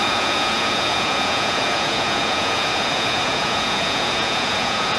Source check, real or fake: fake